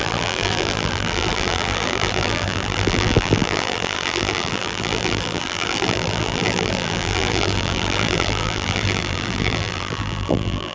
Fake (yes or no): yes